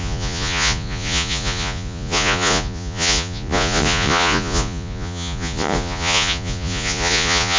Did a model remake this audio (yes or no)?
yes